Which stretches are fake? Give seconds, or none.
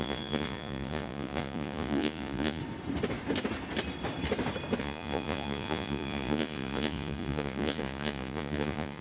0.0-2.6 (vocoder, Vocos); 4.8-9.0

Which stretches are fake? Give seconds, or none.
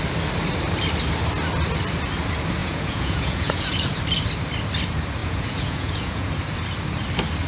2.6-4.0 (vocoder, Vocos); 5.2-6.3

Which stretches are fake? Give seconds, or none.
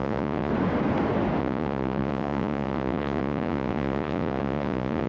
0.0-0.5 (vocoder, Vocos); 1.4-5.1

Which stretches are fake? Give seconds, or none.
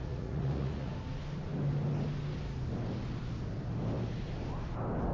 0.0-0.9 (vocoder, Vocos)